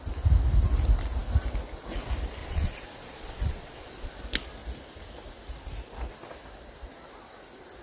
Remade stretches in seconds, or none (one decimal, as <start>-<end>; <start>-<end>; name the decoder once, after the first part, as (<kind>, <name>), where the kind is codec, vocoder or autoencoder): 2.4-4.1 (vocoder, Vocos)

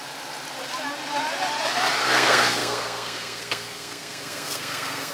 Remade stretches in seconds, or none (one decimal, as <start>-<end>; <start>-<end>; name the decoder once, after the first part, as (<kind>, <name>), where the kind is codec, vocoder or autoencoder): 2.0-5.1 (codec, SNAC)

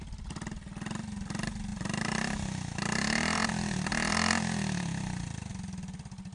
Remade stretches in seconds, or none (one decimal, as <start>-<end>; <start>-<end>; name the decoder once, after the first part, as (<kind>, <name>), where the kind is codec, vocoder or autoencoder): 1.7-5.5 (vocoder, BigVGAN v2)

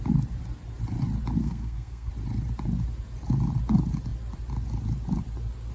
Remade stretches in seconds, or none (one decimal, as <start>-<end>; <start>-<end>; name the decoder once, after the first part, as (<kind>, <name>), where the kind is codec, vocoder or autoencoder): 1.4-2.1 (codec, SNAC)

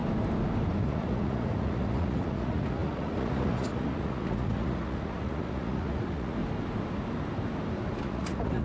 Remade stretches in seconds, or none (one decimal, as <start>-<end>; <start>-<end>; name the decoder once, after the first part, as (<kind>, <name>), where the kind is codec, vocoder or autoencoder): 0.8-6.4 (vocoder, Vocos); 8.0-8.6

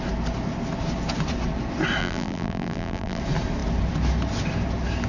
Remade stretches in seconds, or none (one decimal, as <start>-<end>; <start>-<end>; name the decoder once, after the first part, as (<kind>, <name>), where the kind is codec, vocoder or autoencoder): 2.0-3.2 (vocoder, BigVGAN v2)

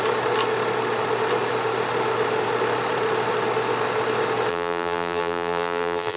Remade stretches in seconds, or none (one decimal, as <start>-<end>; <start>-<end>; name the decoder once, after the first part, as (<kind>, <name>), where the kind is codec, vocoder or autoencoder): 4.5-6.2 (vocoder, BigVGAN v2)

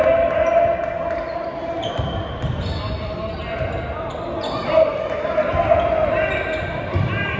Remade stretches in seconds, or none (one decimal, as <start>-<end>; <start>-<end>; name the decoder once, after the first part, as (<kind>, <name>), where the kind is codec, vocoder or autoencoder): none